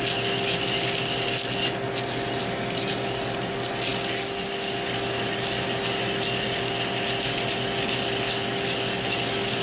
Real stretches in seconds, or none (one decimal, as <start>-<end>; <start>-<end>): 0.0-9.6